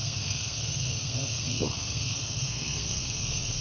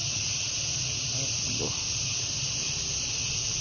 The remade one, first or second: first